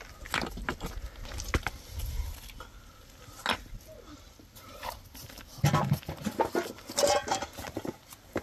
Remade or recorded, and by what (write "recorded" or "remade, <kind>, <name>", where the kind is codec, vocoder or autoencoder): recorded